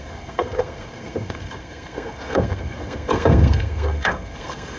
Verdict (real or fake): fake